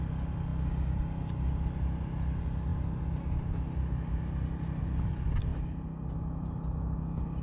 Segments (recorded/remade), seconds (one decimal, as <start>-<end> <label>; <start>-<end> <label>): 0.0-7.4 recorded